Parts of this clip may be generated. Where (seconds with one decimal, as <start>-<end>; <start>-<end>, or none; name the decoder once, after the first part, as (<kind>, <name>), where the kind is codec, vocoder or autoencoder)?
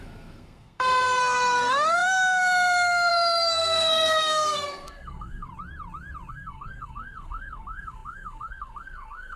0.0-5.5 (codec, SNAC); 6.3-9.4